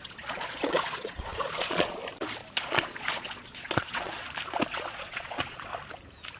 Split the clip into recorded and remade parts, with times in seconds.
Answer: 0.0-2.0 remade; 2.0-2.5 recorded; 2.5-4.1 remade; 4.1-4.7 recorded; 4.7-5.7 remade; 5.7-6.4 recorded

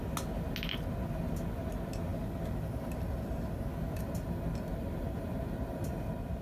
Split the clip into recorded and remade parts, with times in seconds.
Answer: 0.0-6.4 recorded